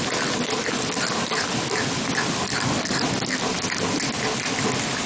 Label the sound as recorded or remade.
recorded